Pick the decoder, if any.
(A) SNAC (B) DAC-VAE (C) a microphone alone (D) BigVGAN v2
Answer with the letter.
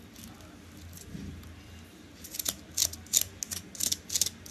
C